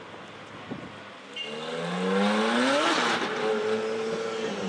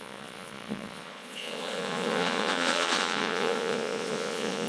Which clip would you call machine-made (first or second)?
second